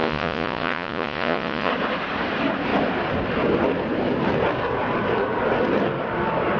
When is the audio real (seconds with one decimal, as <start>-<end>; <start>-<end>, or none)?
1.7-6.6